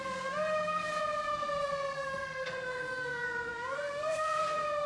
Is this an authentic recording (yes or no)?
no